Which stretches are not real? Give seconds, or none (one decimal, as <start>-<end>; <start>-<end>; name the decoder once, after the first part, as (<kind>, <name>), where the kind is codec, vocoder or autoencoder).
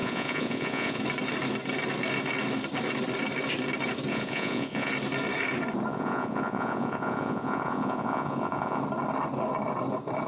0.0-1.0 (vocoder, Vocos); 4.1-4.9; 5.9-8.8